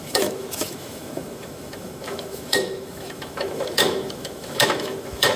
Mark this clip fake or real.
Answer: fake